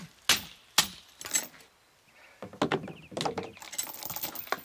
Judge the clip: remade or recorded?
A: recorded